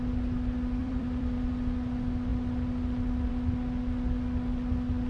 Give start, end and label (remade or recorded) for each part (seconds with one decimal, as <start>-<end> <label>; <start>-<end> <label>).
0.0-0.8 recorded; 0.8-1.5 remade; 1.5-5.1 recorded